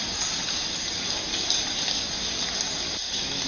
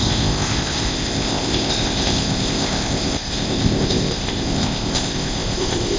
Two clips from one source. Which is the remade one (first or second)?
second